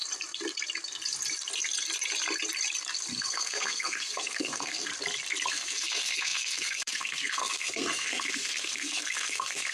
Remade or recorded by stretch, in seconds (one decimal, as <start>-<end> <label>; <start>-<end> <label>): 0.0-3.1 recorded; 3.1-4.9 remade; 4.9-5.5 recorded; 5.5-9.7 remade